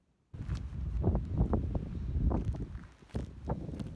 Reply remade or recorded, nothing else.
recorded